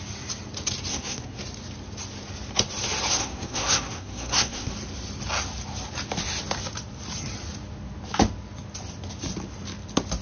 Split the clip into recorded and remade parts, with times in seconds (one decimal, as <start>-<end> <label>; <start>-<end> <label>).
0.0-0.9 recorded; 0.9-1.4 remade; 1.4-3.2 recorded; 3.2-4.7 remade; 4.7-10.2 recorded